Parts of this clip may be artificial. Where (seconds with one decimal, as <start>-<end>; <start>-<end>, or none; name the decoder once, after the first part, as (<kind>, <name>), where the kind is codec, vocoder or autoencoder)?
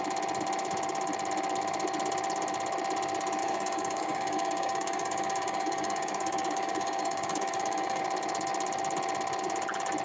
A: 3.4-8.0 (codec, DAC)